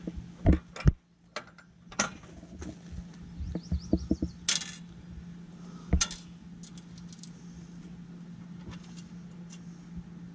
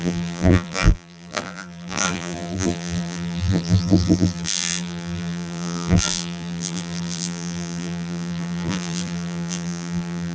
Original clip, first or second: first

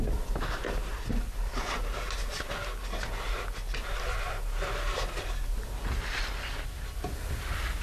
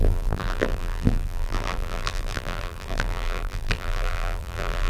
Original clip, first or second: first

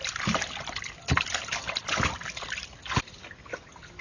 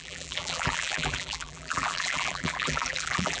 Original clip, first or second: first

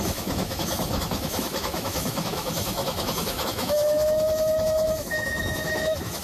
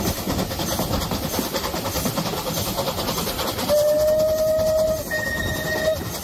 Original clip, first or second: second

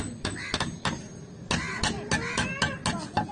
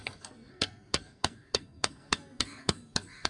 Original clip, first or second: first